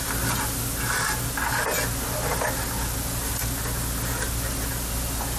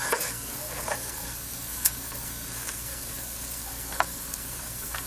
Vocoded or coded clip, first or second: second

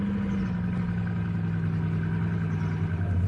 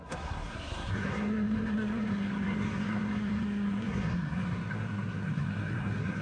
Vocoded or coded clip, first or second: second